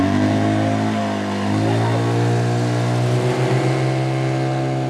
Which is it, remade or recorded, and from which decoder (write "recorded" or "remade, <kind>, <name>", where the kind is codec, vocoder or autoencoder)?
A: recorded